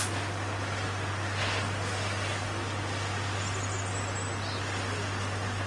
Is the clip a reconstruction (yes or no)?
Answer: no